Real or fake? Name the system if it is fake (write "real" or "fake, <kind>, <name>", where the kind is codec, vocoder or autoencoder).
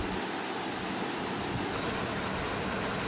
real